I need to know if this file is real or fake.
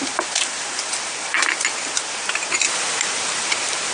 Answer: fake